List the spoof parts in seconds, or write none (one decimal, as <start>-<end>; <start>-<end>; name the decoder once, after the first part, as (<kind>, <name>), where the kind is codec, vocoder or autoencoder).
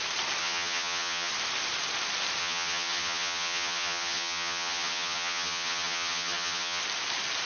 0.4-1.3 (vocoder, HiFi-GAN); 2.4-6.8